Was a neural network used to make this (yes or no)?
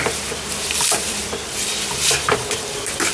yes